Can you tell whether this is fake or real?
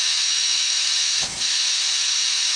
fake